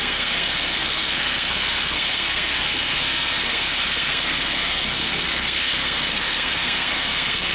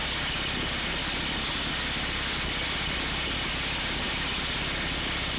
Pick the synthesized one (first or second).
first